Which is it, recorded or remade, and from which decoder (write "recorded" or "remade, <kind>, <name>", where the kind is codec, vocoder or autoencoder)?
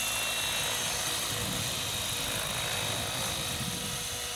recorded